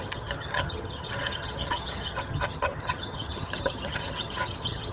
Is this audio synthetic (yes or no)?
yes